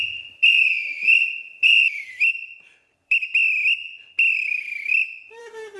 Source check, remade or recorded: remade